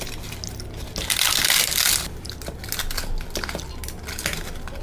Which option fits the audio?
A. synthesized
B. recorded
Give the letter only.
B